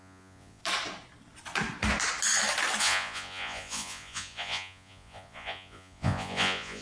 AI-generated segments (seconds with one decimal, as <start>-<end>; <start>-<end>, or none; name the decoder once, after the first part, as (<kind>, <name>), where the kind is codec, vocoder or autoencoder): 0.0-0.6 (vocoder, Vocos); 2.8-6.8